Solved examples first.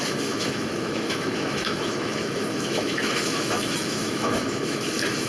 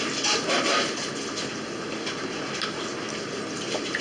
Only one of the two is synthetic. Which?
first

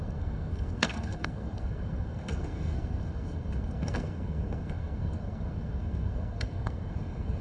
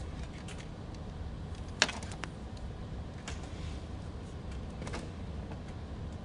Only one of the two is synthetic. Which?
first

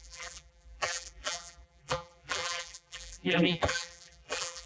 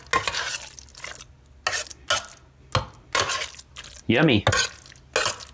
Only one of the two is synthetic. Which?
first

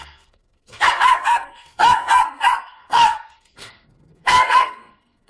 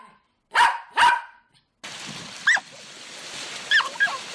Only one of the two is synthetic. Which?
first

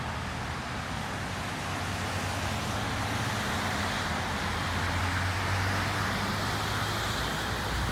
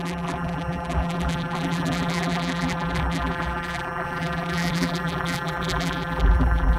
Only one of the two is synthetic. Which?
second